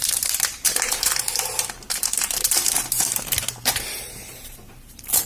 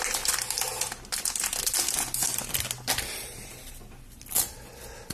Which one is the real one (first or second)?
second